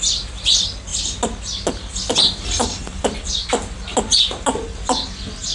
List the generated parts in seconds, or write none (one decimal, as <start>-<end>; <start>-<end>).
none

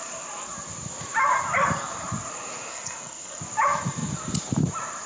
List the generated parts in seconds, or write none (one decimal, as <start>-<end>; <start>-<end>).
2.7-3.4

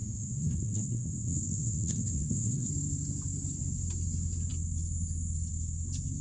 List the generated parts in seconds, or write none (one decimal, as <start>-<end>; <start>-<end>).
0.0-2.7

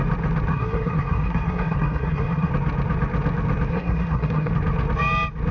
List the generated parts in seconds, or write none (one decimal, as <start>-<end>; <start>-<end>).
0.5-2.5; 3.7-4.5

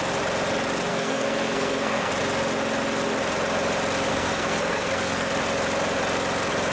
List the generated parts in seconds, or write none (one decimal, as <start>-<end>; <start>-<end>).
0.9-2.1; 4.1-5.3

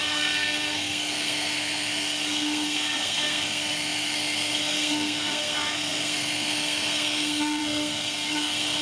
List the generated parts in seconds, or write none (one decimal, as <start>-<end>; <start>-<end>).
0.0-8.8